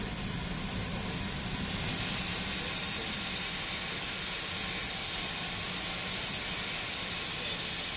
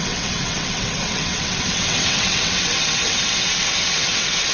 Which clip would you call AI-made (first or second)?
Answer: second